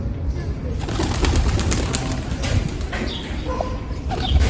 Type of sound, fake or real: real